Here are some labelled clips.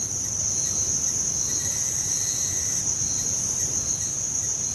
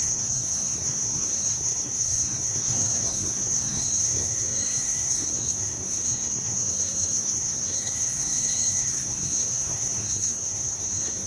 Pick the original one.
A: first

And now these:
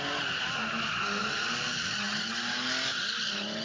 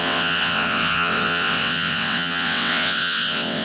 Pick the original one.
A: first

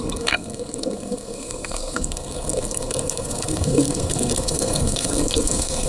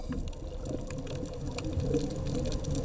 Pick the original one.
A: second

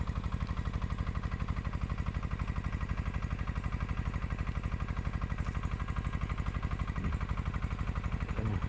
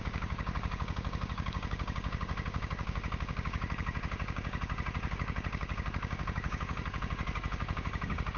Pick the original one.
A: first